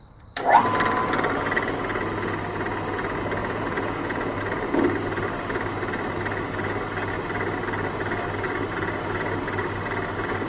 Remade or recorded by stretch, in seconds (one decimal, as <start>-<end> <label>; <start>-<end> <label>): 0.0-3.4 recorded; 3.4-4.4 remade; 4.4-10.5 recorded